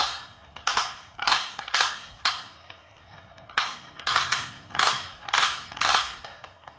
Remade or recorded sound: remade